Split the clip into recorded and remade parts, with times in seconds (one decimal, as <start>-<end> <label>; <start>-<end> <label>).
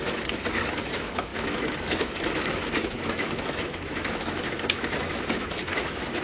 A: 0.0-6.2 remade